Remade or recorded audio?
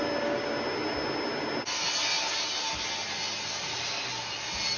recorded